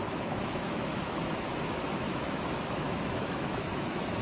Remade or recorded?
remade